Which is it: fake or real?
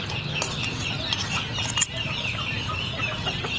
real